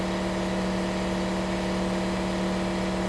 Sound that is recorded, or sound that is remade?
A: recorded